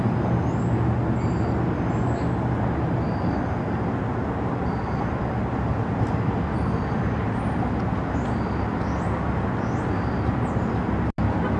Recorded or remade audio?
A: recorded